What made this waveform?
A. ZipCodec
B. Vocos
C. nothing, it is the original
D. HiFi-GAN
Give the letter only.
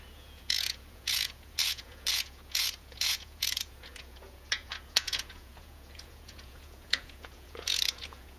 B